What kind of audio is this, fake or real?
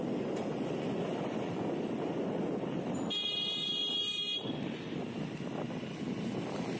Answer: real